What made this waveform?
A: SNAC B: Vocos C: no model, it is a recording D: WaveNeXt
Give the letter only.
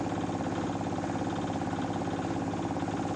C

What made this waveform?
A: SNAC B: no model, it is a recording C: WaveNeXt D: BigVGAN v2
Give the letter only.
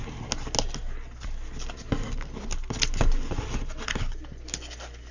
B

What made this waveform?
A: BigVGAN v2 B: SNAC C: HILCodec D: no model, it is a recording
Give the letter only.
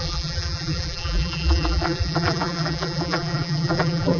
A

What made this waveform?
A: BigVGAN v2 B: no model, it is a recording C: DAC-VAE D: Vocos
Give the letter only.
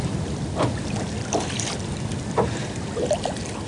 A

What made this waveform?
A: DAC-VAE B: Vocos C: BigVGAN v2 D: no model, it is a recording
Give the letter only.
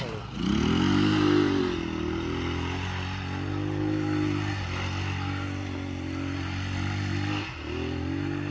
D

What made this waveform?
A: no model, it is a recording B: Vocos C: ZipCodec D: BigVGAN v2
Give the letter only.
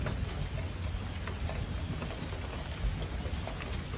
A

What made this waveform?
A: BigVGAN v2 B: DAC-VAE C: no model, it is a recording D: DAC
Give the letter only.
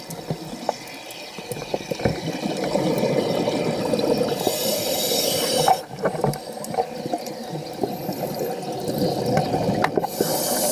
C